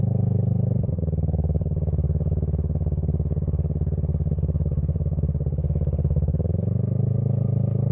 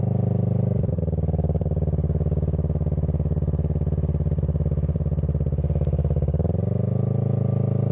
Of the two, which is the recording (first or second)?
second